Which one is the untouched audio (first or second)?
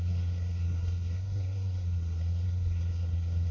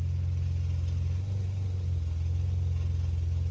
second